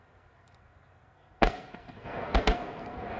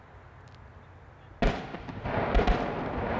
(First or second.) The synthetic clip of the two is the first